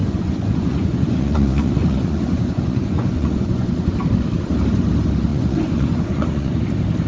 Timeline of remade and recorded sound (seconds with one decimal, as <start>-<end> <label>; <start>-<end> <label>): 0.0-3.9 remade; 3.9-5.3 recorded; 5.3-6.6 remade; 6.6-7.1 recorded